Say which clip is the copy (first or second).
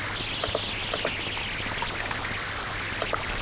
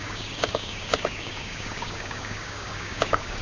second